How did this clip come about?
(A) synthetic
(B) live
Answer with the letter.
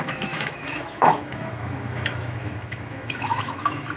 A